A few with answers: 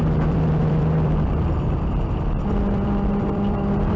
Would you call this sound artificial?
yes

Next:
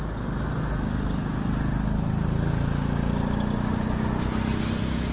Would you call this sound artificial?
no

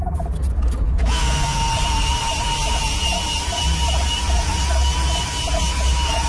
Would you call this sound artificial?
no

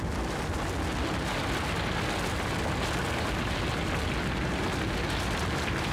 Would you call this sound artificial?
no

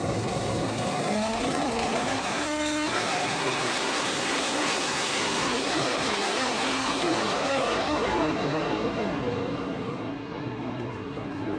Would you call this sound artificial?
yes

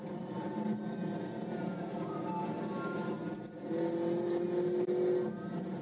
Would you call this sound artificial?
no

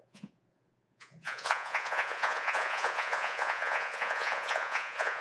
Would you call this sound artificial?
yes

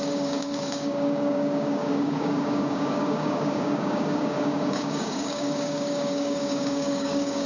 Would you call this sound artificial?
yes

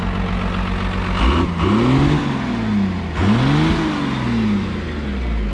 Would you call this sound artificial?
no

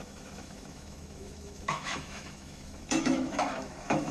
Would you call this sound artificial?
yes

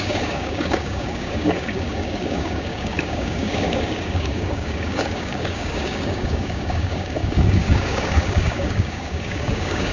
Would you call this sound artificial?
yes